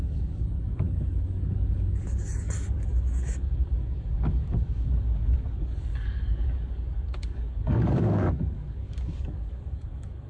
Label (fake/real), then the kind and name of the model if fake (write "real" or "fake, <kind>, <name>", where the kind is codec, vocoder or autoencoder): fake, codec, DAC